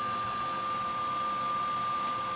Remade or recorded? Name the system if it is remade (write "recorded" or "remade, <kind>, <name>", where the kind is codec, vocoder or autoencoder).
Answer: recorded